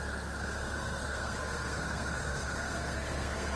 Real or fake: fake